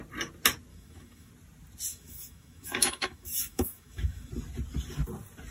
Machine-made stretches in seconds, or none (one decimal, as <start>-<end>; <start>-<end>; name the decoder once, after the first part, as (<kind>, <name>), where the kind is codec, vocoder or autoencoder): 0.7-1.3 (autoencoder, DAC-VAE); 1.9-4.3